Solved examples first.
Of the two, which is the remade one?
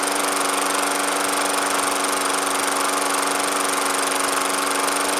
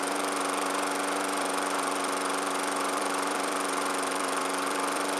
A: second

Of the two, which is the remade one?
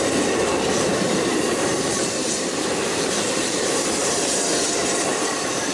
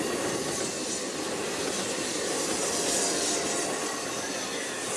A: first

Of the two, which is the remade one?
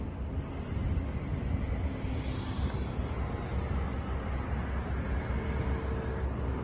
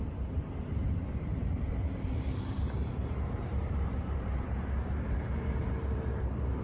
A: second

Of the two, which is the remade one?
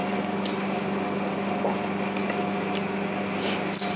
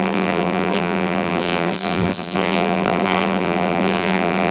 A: second